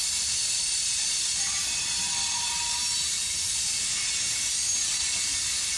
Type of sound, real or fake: fake